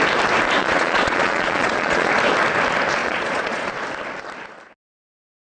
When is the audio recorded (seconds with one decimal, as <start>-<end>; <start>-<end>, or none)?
0.0-0.6; 2.1-3.0; 3.7-5.5